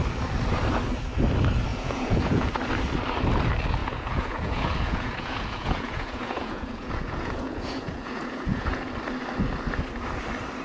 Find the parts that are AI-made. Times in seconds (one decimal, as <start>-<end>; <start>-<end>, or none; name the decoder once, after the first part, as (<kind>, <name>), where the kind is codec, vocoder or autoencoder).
1.7-2.5 (vocoder, Vocos); 3.8-8.9

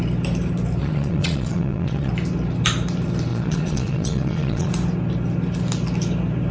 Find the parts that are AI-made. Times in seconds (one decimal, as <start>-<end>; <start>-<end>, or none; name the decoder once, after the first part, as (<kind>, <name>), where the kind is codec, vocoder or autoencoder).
0.8-2.1 (vocoder, Vocos); 3.3-4.7

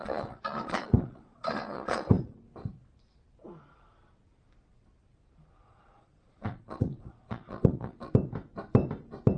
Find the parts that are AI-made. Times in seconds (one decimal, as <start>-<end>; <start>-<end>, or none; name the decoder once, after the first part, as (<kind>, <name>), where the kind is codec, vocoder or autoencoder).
0.0-2.4 (vocoder, Vocos); 5.6-8.1

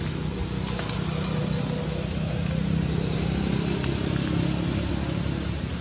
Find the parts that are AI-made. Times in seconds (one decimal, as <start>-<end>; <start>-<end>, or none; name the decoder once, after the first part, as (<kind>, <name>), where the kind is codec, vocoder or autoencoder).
none

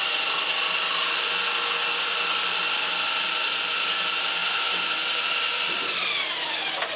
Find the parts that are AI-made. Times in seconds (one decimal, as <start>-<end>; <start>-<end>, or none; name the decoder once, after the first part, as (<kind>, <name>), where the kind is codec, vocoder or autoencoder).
none